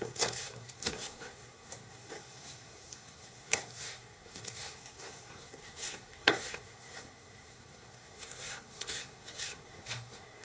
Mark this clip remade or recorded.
remade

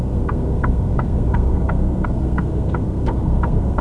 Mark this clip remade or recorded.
remade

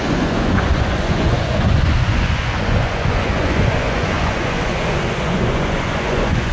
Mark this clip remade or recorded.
remade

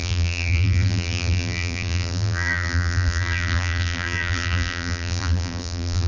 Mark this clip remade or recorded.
remade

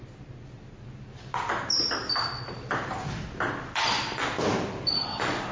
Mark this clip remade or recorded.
recorded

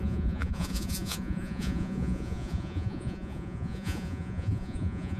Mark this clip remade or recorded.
remade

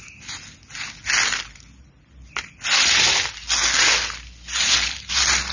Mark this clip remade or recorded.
recorded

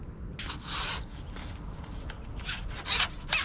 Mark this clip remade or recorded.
recorded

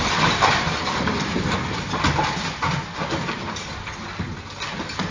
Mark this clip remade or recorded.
recorded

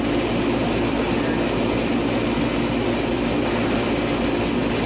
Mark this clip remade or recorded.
recorded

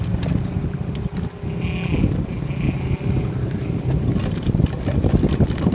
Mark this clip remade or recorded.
recorded